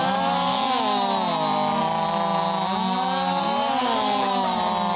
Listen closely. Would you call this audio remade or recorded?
recorded